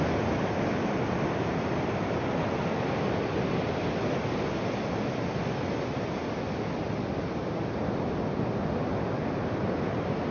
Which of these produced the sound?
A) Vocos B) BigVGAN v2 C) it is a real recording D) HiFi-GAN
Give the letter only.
C